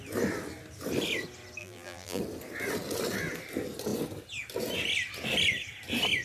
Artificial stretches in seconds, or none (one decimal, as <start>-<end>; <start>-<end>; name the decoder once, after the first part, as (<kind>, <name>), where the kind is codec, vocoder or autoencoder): 1.6-2.2 (vocoder, BigVGAN v2)